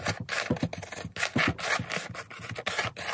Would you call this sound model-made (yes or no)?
no